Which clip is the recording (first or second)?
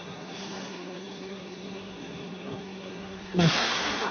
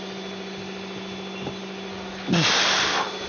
second